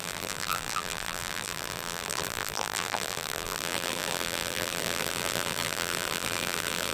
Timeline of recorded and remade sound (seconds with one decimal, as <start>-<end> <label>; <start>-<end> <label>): 0.0-6.9 remade